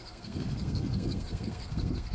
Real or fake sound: fake